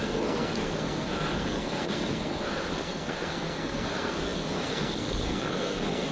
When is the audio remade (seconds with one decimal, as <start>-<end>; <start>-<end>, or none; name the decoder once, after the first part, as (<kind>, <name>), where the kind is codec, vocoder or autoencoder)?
0.0-6.1 (codec, SNAC)